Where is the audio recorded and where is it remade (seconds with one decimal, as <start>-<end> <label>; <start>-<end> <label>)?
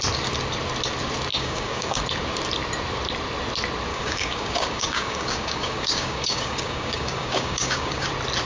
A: 0.0-1.3 recorded; 1.3-2.0 remade; 2.0-3.9 recorded; 3.9-8.1 remade; 8.1-8.5 recorded